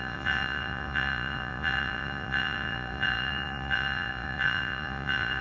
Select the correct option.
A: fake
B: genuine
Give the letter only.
A